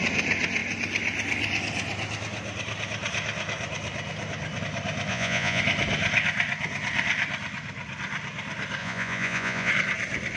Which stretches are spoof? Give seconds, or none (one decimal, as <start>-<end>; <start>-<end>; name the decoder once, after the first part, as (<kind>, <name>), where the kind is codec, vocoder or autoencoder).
5.1-5.6 (vocoder, Vocos); 8.8-9.7